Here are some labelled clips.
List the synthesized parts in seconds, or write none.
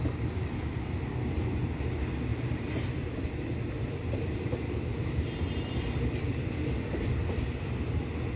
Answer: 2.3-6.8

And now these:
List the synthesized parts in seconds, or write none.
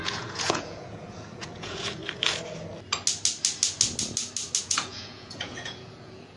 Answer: 0.0-2.0; 4.6-6.4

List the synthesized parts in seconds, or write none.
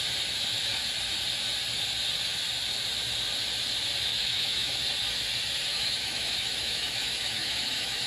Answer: 4.1-4.8; 5.7-8.1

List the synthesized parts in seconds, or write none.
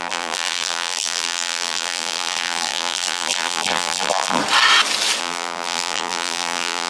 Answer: 0.0-4.4; 5.2-6.9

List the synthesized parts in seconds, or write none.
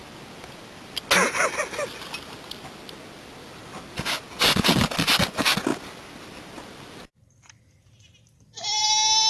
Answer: none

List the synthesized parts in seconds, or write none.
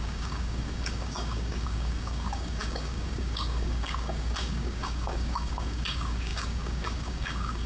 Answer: 0.0-7.7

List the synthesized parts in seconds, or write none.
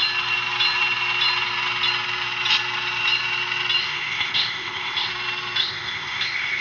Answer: 3.8-5.1; 5.6-6.6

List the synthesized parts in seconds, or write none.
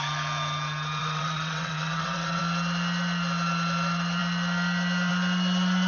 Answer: 1.0-2.4